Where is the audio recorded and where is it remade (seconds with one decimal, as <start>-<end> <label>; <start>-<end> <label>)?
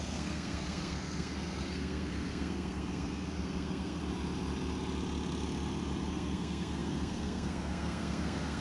0.0-4.0 remade; 4.0-6.1 recorded; 6.1-8.6 remade